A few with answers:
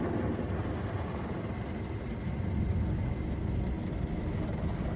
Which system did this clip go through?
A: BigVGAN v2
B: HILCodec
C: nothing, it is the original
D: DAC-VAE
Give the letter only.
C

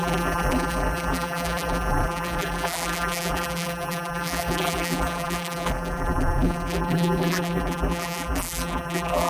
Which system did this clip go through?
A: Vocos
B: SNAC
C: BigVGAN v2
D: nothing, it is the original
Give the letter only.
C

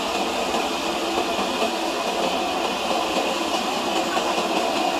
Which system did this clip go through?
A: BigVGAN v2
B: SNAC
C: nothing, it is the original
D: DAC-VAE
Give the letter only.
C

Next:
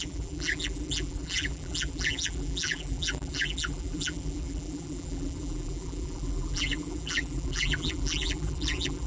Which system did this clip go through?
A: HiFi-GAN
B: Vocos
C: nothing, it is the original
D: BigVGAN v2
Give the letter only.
D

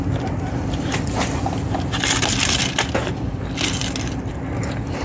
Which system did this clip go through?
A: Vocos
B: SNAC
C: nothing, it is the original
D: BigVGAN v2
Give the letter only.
C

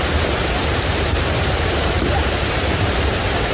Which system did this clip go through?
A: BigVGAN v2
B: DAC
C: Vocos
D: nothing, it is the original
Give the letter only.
A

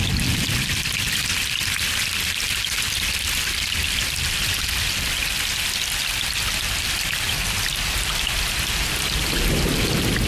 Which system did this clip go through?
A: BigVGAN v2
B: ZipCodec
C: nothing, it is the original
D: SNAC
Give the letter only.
C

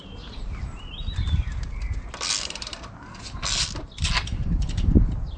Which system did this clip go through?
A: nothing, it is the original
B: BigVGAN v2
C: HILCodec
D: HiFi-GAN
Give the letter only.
A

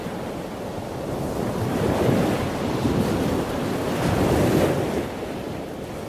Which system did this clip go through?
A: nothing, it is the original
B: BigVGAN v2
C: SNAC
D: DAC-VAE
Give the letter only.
B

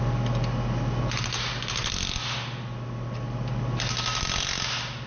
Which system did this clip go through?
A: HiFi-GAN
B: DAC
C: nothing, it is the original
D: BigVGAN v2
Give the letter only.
C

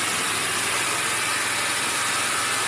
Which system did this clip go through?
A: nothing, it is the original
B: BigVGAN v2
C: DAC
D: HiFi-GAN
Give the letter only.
B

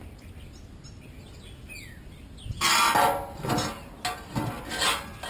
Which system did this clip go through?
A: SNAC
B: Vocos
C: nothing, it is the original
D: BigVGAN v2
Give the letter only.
C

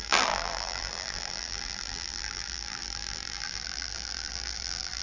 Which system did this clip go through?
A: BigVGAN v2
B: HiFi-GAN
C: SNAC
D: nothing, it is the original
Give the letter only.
A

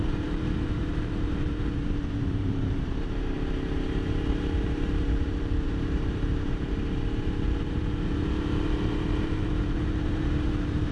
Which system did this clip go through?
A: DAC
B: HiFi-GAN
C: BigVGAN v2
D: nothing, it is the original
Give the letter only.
C